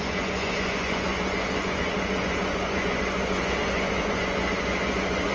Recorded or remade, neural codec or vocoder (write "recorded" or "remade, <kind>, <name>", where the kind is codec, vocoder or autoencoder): remade, vocoder, Vocos